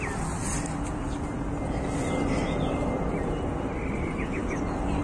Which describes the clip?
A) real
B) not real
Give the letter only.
A